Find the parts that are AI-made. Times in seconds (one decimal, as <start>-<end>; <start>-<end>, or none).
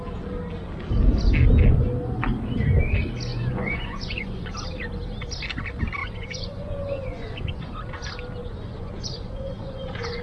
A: 3.3-4.5; 6.0-7.9; 8.4-10.2